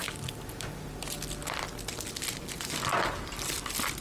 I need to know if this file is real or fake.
real